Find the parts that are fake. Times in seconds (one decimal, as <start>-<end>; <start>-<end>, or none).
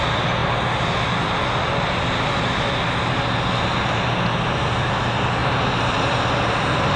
5.4-6.2